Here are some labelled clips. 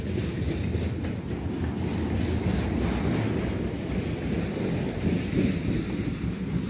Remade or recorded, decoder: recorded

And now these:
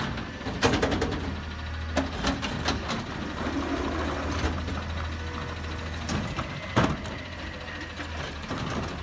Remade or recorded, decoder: recorded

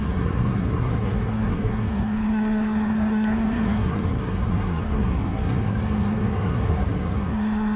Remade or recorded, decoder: remade, codec, SNAC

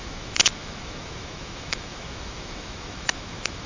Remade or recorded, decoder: remade, autoencoder, DAC-VAE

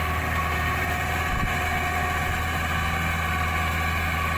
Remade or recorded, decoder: recorded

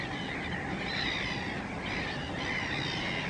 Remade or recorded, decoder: recorded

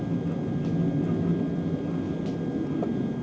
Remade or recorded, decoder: recorded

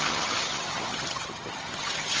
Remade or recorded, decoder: remade, vocoder, HiFi-GAN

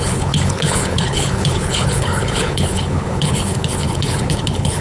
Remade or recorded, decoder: remade, codec, HILCodec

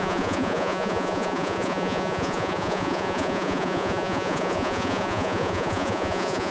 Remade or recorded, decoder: remade, vocoder, Vocos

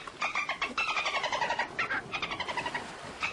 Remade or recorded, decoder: recorded